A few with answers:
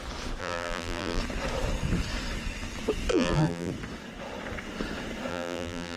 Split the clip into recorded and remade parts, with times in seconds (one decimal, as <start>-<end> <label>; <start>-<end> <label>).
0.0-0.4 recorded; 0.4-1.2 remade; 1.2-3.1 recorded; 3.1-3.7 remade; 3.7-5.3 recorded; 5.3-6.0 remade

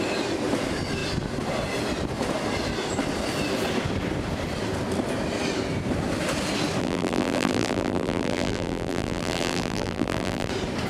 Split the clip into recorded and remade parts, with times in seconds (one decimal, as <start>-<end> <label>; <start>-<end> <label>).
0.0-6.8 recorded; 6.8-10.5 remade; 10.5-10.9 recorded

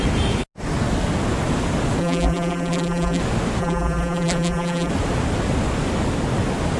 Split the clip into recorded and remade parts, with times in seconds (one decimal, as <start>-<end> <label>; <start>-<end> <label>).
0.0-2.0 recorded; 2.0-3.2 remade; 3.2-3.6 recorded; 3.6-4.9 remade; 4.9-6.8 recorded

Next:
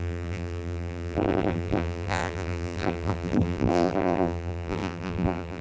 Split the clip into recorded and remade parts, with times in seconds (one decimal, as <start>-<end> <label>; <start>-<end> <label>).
0.0-5.6 remade